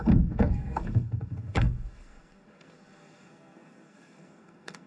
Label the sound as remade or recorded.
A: remade